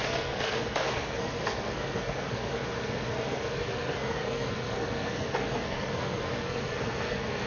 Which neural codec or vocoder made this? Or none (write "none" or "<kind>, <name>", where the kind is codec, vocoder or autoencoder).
codec, SNAC